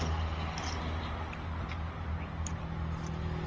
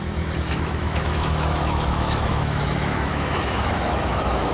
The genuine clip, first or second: first